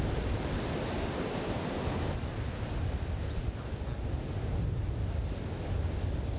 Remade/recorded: recorded